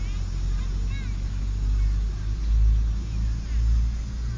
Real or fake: real